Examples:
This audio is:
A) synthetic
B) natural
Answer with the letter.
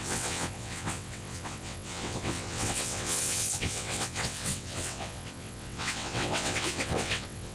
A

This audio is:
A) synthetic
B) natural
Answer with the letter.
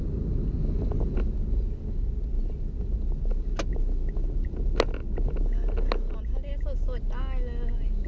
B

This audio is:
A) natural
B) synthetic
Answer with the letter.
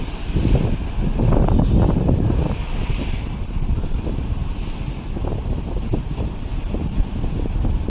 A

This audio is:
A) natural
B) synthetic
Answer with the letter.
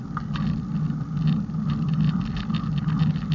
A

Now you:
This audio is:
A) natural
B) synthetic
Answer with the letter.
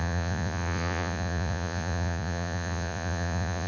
B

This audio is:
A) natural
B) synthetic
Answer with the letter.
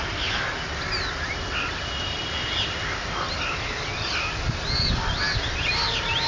A